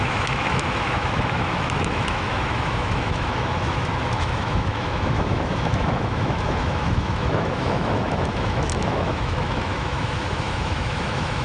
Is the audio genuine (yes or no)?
no